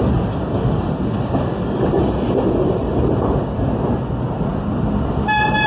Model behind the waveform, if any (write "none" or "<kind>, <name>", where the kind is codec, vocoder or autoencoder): none